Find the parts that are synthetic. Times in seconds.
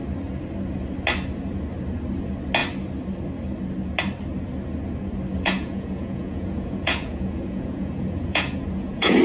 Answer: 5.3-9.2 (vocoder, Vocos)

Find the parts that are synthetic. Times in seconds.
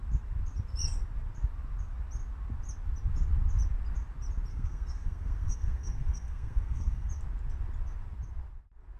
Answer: 4.5-7.1 (codec, SNAC)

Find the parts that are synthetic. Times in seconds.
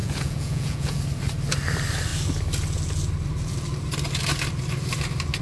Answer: 0.0-1.0 (vocoder, Vocos)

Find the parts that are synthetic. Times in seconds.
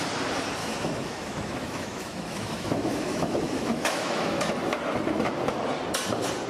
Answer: 0.6-4.5 (autoencoder, DAC-VAE)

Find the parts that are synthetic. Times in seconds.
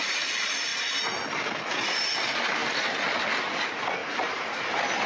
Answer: 0.7-1.3 (vocoder, BigVGAN v2); 4.0-5.1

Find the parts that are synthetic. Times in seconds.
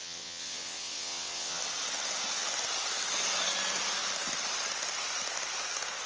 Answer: 0.0-1.6 (vocoder, WaveNeXt)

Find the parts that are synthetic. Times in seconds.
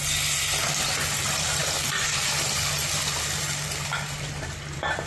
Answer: 1.6-5.1 (vocoder, BigVGAN v2)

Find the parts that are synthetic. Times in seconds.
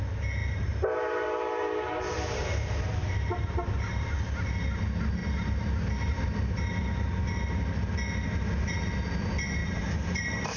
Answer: 0.4-4.3 (vocoder, BigVGAN v2); 5.2-6.1; 9.6-10.6